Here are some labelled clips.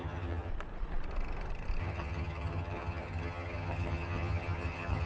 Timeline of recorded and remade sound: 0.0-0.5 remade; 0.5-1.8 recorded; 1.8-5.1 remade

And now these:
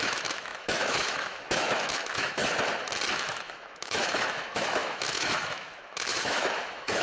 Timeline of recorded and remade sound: 0.0-2.4 remade; 2.4-3.1 recorded; 3.1-7.0 remade

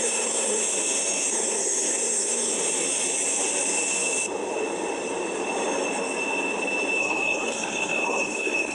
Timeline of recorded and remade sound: 0.0-0.6 remade; 0.6-1.3 recorded; 1.3-2.5 remade; 2.5-7.0 recorded; 7.0-8.7 remade

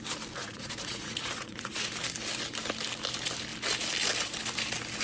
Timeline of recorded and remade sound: 0.0-0.4 recorded; 0.4-1.9 remade; 1.9-5.0 recorded